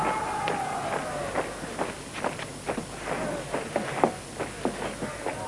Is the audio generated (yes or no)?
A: no